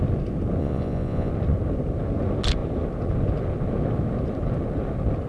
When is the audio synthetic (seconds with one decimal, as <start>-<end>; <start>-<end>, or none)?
0.6-1.3